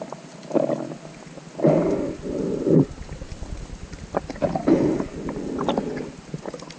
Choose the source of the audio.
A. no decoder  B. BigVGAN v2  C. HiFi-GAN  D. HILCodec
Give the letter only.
A